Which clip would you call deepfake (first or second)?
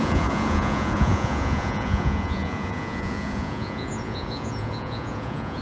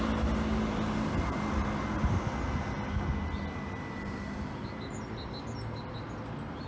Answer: first